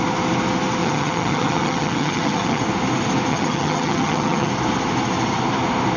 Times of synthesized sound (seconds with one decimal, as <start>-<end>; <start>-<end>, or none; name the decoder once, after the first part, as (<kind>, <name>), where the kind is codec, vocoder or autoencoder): 0.8-2.6 (vocoder, HiFi-GAN); 3.3-4.5